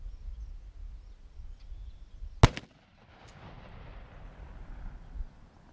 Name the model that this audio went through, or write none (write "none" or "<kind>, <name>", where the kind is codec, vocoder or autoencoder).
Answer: none